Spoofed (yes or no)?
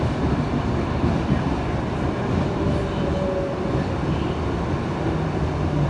no